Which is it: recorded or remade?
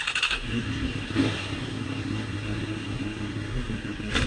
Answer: remade